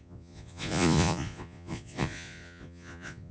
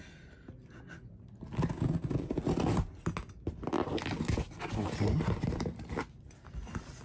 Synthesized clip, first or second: first